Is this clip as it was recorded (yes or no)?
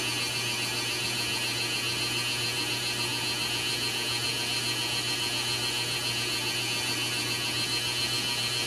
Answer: yes